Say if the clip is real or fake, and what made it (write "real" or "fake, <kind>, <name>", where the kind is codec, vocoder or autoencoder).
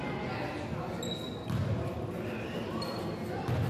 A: real